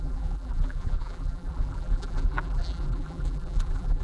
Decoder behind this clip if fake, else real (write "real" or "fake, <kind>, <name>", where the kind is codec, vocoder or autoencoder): fake, vocoder, BigVGAN v2